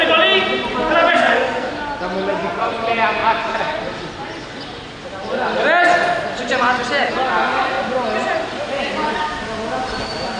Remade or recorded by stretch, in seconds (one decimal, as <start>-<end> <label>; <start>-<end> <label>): 0.0-1.1 recorded; 1.1-1.7 remade; 1.7-10.4 recorded

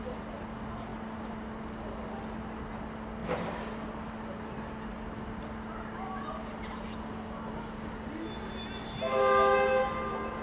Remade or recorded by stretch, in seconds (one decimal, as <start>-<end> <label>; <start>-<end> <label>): 0.0-10.4 recorded

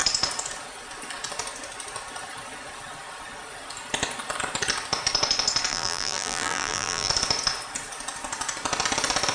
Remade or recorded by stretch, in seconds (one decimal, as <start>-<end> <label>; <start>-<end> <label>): 0.0-5.7 recorded; 5.7-7.1 remade; 7.1-9.3 recorded

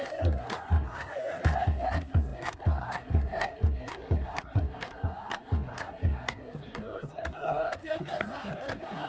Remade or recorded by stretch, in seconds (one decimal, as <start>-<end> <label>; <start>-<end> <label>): 0.0-9.1 remade

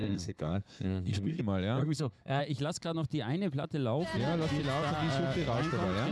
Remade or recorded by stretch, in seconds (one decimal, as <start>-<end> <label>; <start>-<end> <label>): 0.0-1.4 remade; 1.4-1.8 recorded; 1.8-2.4 remade; 2.4-6.1 recorded